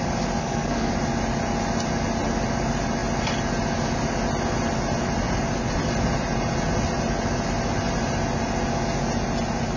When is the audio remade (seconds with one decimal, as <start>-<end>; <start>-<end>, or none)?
0.4-0.9